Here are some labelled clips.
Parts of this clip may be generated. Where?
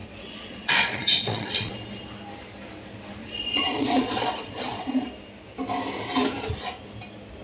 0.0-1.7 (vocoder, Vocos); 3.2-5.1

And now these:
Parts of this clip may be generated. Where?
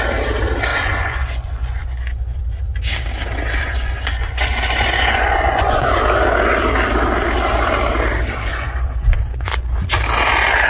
0.7-2.4 (vocoder, Vocos); 3.6-6.0; 8.5-9.7